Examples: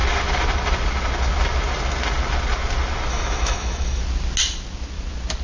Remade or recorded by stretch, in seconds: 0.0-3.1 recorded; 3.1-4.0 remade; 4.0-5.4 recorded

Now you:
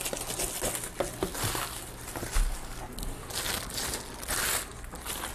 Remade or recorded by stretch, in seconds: 0.0-5.3 recorded

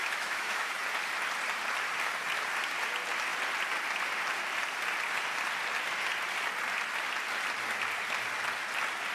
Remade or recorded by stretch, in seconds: 0.0-0.8 remade; 0.8-9.1 recorded

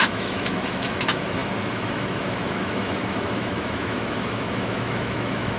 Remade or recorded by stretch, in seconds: 0.0-5.6 remade

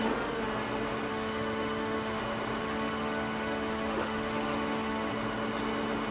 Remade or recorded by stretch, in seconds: 0.0-1.1 recorded; 1.1-2.2 remade; 2.2-2.6 recorded; 2.6-5.1 remade; 5.1-6.1 recorded

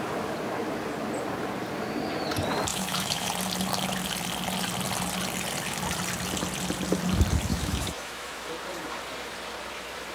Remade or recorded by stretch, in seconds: 0.0-2.7 recorded; 2.7-3.3 remade; 3.3-7.5 recorded; 7.5-8.5 remade; 8.5-10.1 recorded

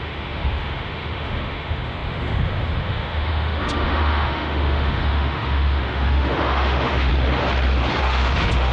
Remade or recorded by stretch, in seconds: 0.0-7.1 remade; 7.1-8.0 recorded; 8.0-8.7 remade